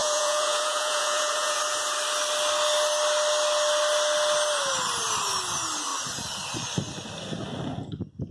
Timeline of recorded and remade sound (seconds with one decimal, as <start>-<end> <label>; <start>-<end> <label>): 0.0-1.6 remade; 1.6-8.3 recorded

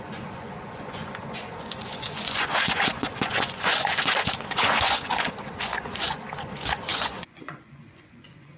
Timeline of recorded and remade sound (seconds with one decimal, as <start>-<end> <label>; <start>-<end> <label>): 0.0-8.6 remade

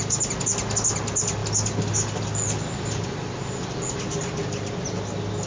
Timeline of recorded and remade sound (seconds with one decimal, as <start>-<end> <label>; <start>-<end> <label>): 0.0-5.5 recorded

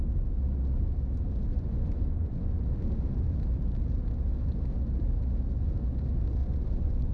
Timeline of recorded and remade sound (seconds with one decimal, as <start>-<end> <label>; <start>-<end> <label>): 0.0-1.5 recorded; 1.5-2.6 remade; 2.6-6.4 recorded; 6.4-7.1 remade

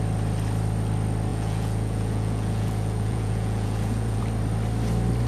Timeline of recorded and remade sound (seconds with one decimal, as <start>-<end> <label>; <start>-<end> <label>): 0.0-1.3 recorded; 1.3-4.2 remade; 4.2-5.3 recorded

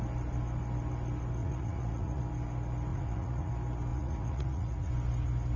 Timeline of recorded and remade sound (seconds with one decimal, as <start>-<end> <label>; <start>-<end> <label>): 0.0-1.4 recorded; 1.4-2.2 remade; 2.2-2.9 recorded; 2.9-3.5 remade; 3.5-3.9 recorded; 3.9-4.9 remade; 4.9-5.6 recorded

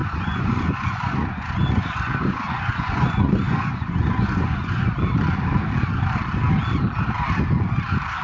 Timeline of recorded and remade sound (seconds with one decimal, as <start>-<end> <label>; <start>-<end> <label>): 0.0-4.9 remade; 4.9-8.2 recorded

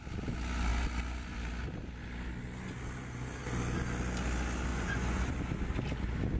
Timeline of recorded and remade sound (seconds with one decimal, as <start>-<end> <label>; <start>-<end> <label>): 0.0-4.7 recorded; 4.7-5.3 remade; 5.3-6.4 recorded